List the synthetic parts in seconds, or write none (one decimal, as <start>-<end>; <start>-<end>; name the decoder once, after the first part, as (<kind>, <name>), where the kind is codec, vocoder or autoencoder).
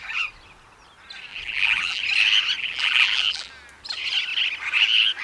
1.3-2.0 (vocoder, BigVGAN v2); 2.6-3.5